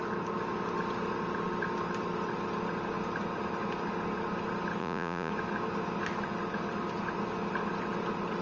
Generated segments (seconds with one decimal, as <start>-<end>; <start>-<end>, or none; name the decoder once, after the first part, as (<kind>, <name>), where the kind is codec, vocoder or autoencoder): 4.8-5.3 (vocoder, Vocos)